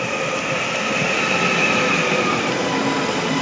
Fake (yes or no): no